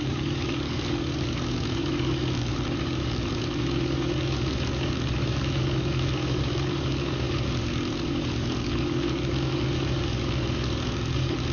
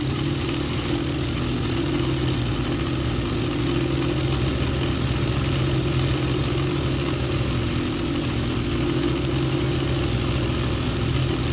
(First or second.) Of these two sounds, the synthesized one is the first